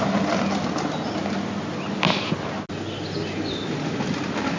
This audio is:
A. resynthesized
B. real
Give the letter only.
B